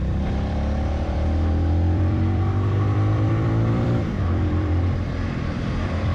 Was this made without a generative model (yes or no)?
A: no